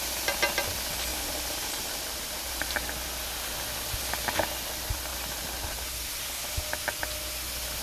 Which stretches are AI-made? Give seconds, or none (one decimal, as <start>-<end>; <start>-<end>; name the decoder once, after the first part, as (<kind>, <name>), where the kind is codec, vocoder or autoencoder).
1.1-2.9 (vocoder, BigVGAN v2); 5.1-6.2